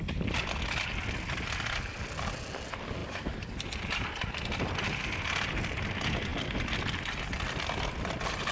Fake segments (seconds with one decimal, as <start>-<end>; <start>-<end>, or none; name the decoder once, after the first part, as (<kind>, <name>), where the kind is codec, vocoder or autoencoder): none

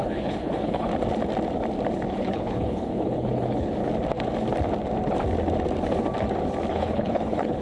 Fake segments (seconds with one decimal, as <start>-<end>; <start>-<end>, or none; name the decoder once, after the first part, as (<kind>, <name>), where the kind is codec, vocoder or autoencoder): 0.0-0.9 (codec, HILCodec); 2.1-3.8; 6.7-7.6

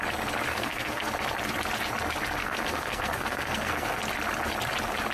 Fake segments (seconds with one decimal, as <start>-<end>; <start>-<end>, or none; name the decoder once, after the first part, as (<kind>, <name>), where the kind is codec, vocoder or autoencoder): 0.5-1.1 (codec, SNAC); 2.4-4.0

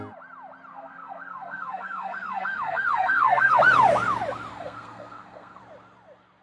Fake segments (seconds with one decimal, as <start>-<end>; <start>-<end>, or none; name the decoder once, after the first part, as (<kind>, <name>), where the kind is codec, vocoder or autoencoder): 0.7-3.6 (codec, SNAC); 4.5-5.6

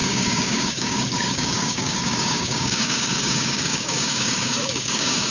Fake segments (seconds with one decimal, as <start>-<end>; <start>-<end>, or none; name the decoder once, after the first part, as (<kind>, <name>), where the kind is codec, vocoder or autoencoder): 0.0-5.3 (codec, DAC)

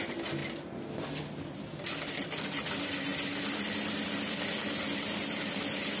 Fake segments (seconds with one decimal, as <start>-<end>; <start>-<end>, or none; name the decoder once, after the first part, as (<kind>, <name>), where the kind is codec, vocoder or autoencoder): none

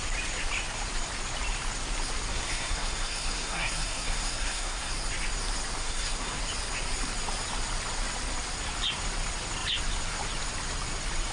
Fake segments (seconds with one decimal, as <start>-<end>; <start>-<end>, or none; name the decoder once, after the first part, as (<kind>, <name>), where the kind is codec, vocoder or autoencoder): 2.3-4.9 (codec, SNAC); 5.8-6.4

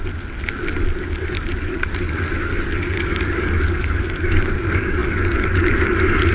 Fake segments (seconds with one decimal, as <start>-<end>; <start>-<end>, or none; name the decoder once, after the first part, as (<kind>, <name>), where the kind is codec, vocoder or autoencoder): 1.2-6.3 (codec, DAC)